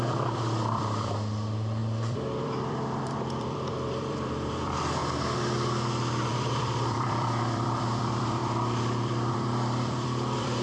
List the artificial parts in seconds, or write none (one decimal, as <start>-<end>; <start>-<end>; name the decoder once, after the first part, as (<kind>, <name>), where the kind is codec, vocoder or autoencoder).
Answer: 0.0-5.0 (vocoder, BigVGAN v2); 6.3-10.6